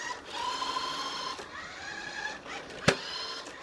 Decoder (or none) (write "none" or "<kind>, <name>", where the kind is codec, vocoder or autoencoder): none